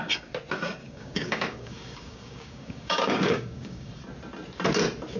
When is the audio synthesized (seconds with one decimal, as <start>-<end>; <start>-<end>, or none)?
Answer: 0.8-3.9